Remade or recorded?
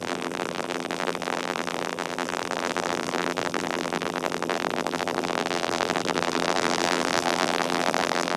remade